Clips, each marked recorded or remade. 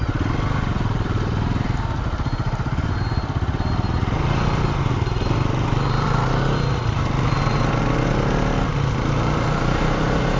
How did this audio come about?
recorded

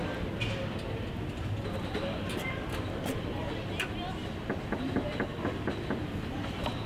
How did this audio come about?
recorded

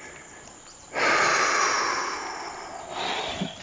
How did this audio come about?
recorded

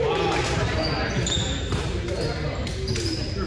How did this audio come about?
recorded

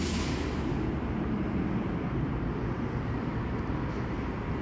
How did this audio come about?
recorded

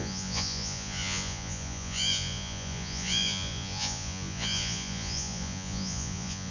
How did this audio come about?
remade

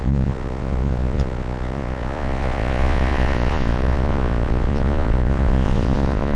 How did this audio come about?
remade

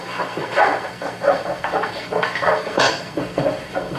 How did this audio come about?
remade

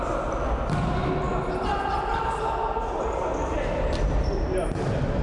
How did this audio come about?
recorded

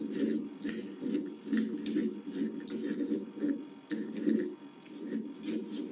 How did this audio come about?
recorded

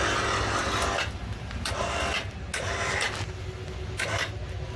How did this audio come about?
recorded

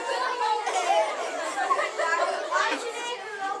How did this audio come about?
recorded